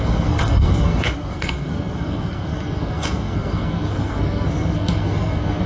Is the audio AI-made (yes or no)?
yes